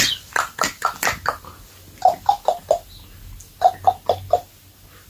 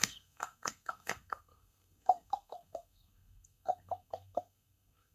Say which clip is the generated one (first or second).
second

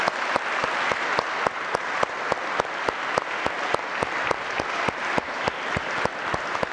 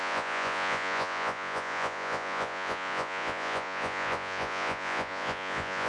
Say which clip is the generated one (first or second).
second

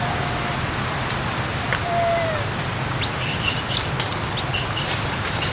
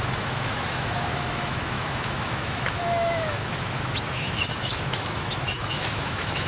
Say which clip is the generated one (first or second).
second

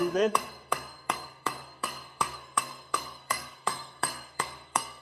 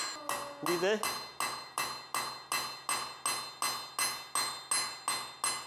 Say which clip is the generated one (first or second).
first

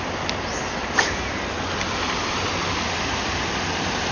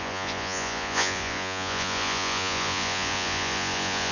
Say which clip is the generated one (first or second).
second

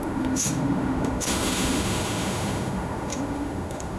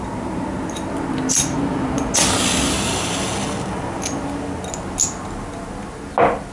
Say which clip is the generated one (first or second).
first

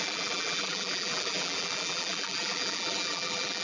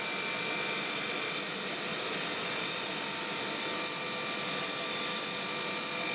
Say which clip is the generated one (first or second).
first